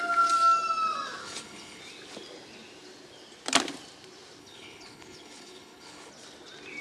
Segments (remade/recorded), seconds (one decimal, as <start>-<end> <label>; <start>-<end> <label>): 0.0-1.2 recorded; 1.2-1.8 remade; 1.8-4.4 recorded; 4.4-6.1 remade; 6.1-6.8 recorded